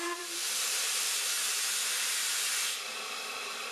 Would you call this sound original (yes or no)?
no